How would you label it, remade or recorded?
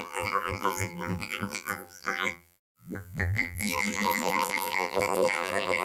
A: remade